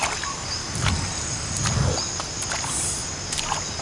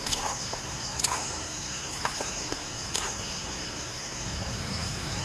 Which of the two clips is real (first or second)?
first